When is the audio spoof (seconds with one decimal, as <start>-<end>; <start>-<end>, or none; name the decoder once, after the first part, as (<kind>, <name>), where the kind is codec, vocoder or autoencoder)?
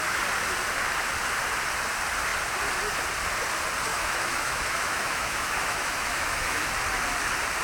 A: 3.9-6.7 (autoencoder, DAC-VAE)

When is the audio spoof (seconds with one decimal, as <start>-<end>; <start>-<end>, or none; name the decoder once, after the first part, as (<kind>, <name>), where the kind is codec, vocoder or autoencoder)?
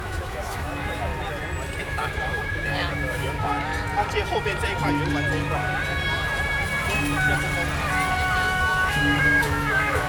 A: 0.0-1.1 (autoencoder, DAC-VAE); 1.8-3.7; 8.6-10.1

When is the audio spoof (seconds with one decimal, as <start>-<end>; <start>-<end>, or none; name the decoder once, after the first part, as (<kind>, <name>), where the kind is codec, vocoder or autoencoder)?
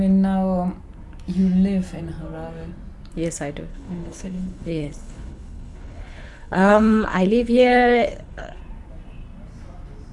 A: 3.7-8.6 (codec, HILCodec)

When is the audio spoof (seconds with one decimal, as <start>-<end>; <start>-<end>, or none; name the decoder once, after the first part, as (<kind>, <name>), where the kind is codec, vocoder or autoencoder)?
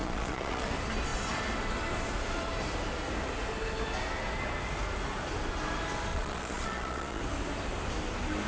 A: 0.0-0.7 (vocoder, Vocos); 6.1-7.2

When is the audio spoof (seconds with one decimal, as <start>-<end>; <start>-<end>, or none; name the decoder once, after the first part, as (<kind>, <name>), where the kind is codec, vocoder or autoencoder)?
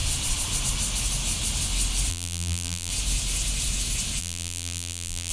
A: 2.1-2.9 (vocoder, BigVGAN v2); 4.2-5.3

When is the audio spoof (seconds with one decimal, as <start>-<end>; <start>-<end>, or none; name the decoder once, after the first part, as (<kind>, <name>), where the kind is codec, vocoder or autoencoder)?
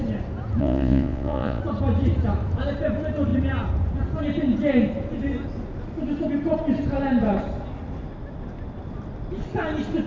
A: 0.6-1.6 (vocoder, Vocos)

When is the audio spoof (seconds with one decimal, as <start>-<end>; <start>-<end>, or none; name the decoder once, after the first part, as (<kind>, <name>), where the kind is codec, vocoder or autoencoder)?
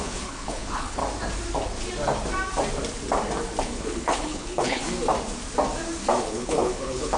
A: 0.0-1.0 (codec, HILCodec); 3.6-4.8; 6.2-7.2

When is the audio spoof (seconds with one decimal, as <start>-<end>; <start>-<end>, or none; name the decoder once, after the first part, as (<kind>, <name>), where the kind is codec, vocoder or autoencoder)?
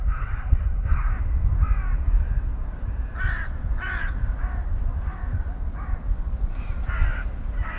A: 0.0-1.1 (codec, SNAC)